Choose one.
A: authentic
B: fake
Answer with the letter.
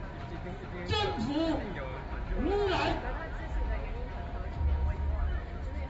A